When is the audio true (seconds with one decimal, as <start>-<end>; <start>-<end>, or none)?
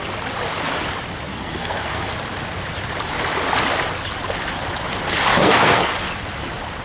0.0-1.3; 2.1-5.3; 5.9-6.8